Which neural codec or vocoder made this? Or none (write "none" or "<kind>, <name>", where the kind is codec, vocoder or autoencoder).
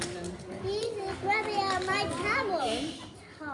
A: none